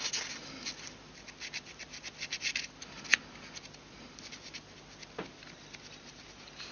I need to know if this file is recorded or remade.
recorded